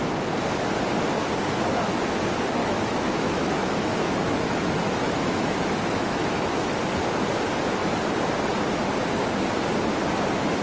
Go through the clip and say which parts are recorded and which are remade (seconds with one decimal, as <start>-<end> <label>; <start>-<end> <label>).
0.0-2.6 recorded; 2.6-6.8 remade; 6.8-10.6 recorded